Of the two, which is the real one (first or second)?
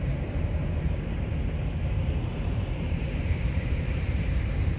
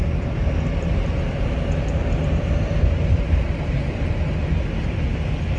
second